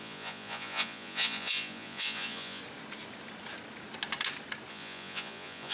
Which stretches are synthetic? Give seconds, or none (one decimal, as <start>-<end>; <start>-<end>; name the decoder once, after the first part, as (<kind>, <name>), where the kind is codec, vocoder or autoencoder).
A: 0.0-2.6 (vocoder, Vocos); 4.7-5.7